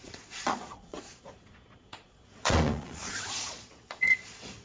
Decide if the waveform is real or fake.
fake